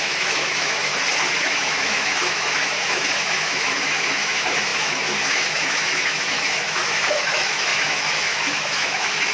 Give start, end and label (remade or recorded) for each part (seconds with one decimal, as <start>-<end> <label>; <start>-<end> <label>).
0.0-0.9 remade; 0.9-1.4 recorded; 1.4-9.3 remade